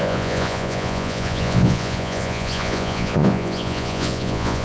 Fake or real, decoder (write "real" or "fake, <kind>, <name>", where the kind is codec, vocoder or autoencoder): fake, vocoder, Vocos